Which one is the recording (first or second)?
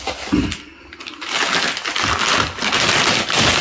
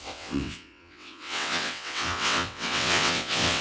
first